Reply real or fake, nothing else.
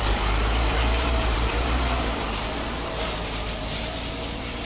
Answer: fake